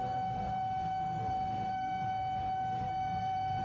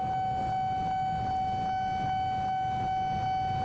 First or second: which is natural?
second